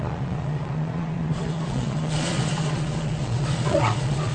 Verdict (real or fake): fake